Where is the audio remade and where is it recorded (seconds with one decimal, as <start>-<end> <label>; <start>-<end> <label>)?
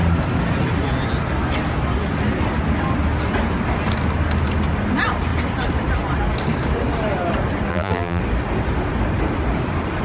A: 0.0-7.7 recorded; 7.7-8.2 remade; 8.2-10.0 recorded